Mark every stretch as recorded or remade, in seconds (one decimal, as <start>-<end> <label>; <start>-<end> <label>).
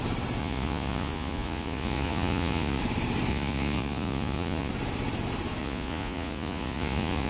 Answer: 0.0-0.4 recorded; 0.4-2.8 remade; 2.8-3.3 recorded; 3.3-4.7 remade; 4.7-5.6 recorded; 5.6-7.3 remade